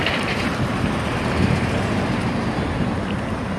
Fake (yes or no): no